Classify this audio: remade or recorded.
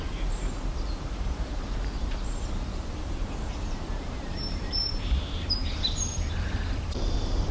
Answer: remade